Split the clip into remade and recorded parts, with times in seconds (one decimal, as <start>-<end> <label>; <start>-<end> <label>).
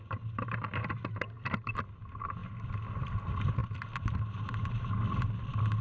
0.0-5.8 recorded